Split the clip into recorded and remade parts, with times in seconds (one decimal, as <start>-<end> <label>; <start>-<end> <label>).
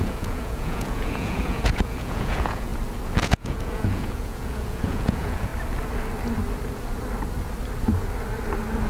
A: 0.0-2.7 remade; 2.7-3.2 recorded; 3.2-5.5 remade; 5.5-8.9 recorded